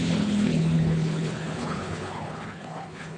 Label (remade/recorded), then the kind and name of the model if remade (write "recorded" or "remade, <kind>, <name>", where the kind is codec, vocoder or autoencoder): remade, codec, HILCodec